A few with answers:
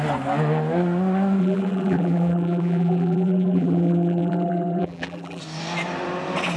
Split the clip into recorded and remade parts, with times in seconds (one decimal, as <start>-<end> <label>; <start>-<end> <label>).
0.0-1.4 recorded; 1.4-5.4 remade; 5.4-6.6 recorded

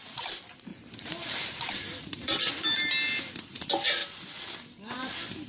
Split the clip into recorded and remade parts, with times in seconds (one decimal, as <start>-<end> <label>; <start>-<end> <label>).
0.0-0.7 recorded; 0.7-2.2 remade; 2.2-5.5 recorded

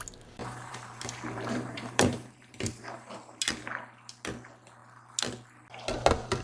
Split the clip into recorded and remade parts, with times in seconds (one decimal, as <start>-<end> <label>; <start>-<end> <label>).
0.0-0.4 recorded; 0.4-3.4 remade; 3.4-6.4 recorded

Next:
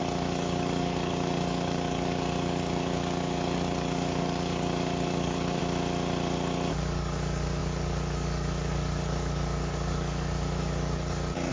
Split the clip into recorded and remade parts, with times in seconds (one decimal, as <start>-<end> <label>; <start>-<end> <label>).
0.0-5.6 remade; 5.6-6.7 recorded; 6.7-11.5 remade

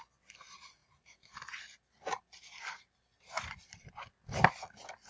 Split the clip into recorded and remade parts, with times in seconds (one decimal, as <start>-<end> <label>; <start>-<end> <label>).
0.0-0.8 recorded; 0.8-3.9 remade; 3.9-5.1 recorded

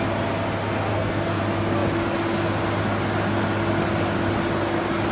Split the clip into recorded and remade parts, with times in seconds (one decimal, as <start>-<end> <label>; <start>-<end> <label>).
0.0-0.9 recorded; 0.9-1.4 remade; 1.4-5.1 recorded

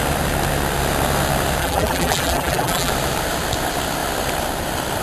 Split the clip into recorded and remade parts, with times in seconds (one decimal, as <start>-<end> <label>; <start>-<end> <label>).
0.0-1.6 recorded; 1.6-2.9 remade; 2.9-5.0 recorded

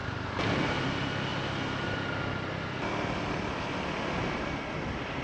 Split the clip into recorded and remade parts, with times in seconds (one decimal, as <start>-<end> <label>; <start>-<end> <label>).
0.0-1.3 remade; 1.3-4.4 recorded; 4.4-5.2 remade